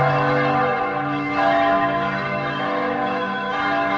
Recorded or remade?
remade